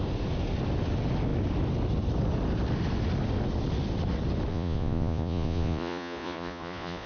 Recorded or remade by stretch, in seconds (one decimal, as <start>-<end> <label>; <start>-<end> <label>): 0.0-4.5 recorded; 4.5-7.1 remade